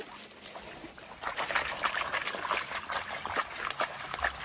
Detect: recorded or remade recorded